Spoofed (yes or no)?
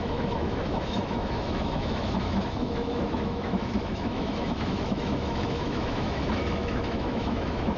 yes